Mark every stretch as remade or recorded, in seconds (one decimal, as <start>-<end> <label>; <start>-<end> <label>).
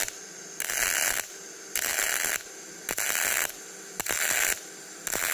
0.0-5.3 recorded